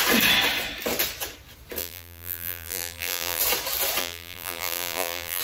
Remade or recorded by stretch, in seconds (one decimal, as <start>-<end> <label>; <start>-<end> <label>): 0.0-1.8 recorded; 1.8-3.4 remade; 3.4-4.0 recorded; 4.0-5.4 remade